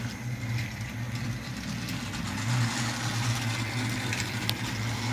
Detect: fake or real real